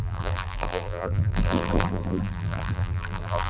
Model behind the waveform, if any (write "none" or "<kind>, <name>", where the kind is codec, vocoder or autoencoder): vocoder, BigVGAN v2